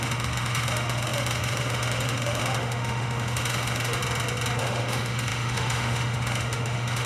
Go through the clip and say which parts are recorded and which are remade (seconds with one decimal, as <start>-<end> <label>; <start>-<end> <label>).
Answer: 0.0-4.0 remade; 4.0-4.6 recorded; 4.6-7.1 remade